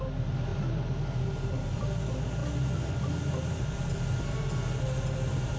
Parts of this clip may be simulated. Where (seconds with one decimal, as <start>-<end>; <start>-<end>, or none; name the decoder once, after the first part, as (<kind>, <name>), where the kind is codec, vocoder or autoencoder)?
none